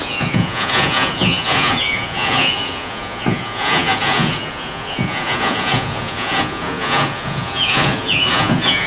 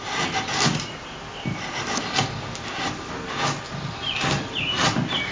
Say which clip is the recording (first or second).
second